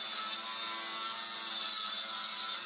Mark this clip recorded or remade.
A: recorded